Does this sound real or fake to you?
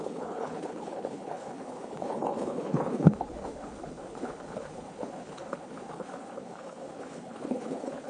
fake